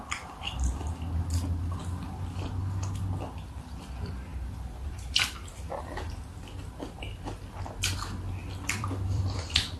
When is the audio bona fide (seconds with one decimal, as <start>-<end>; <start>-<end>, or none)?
0.0-4.3; 5.6-8.4